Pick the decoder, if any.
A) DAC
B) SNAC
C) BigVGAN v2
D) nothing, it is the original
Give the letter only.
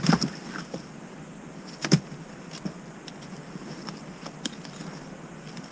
D